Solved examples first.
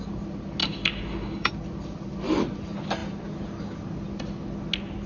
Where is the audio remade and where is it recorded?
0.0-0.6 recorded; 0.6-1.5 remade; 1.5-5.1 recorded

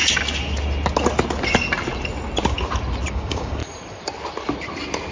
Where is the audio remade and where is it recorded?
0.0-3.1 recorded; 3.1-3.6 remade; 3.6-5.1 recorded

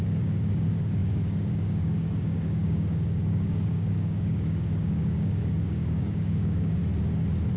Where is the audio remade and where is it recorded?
0.0-6.8 remade; 6.8-7.6 recorded

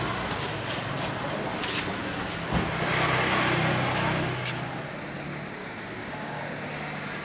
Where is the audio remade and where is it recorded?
0.0-5.6 recorded; 5.6-6.4 remade; 6.4-7.2 recorded

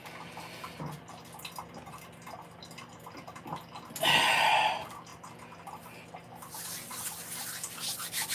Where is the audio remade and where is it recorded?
0.0-8.3 recorded

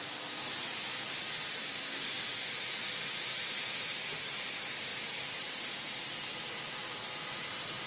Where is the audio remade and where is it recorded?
0.0-1.6 recorded; 1.6-2.2 remade; 2.2-7.9 recorded

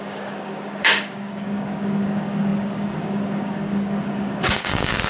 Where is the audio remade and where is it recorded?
0.0-5.1 remade